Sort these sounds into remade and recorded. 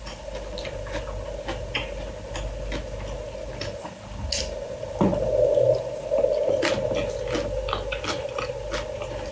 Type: recorded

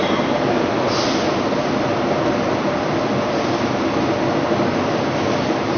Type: recorded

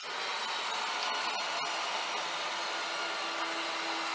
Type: recorded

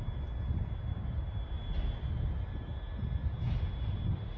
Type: recorded